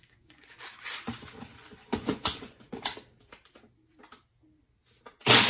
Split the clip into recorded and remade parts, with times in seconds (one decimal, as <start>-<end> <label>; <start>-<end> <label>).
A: 0.0-2.8 remade; 2.8-5.5 recorded